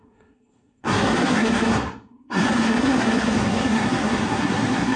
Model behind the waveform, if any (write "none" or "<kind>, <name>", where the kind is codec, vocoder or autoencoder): codec, SNAC